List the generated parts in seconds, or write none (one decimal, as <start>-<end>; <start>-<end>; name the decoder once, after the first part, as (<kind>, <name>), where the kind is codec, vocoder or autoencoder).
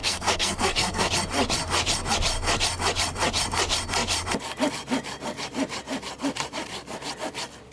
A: 0.0-1.1 (codec, SNAC)